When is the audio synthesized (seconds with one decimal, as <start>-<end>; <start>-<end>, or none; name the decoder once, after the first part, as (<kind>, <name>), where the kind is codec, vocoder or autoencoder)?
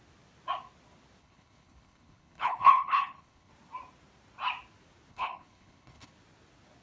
1.2-3.5 (codec, HILCodec); 5.1-6.1